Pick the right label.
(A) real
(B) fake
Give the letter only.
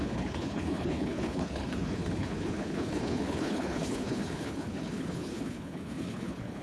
B